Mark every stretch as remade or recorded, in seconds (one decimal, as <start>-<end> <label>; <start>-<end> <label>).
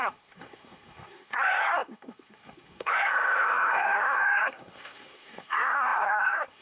0.0-6.6 remade